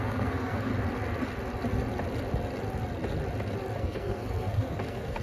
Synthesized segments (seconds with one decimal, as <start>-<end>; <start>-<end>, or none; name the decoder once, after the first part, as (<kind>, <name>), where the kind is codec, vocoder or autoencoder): 0.0-0.7 (codec, SNAC); 3.8-5.2